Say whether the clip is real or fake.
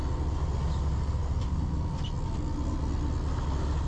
real